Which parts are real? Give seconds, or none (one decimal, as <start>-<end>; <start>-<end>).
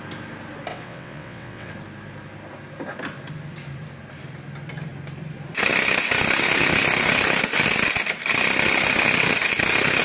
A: 0.0-0.7; 1.7-10.0